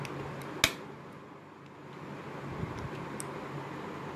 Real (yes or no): yes